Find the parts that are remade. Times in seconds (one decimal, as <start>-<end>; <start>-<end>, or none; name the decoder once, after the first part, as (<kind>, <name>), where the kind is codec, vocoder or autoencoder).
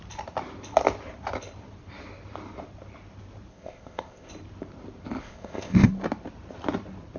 3.5-4.3 (codec, ZipCodec); 5.2-5.9